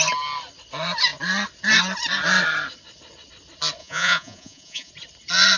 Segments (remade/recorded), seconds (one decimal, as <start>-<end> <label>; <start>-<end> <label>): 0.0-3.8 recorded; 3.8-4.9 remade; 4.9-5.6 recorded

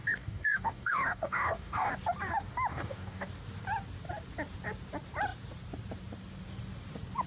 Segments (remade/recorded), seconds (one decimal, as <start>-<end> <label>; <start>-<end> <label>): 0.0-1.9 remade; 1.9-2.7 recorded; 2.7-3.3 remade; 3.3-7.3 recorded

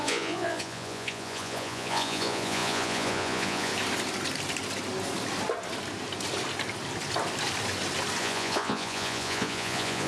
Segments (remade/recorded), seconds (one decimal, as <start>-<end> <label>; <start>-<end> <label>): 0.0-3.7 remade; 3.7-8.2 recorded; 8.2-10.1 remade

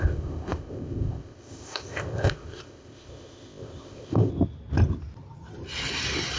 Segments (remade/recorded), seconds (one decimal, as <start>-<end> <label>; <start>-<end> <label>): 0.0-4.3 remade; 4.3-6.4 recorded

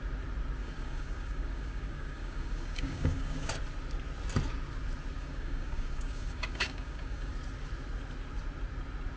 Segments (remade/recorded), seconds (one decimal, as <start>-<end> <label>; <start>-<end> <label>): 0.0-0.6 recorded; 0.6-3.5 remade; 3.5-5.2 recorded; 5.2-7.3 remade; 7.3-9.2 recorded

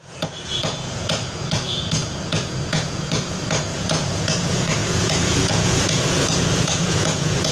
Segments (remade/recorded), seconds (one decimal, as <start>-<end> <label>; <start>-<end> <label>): 0.0-7.5 remade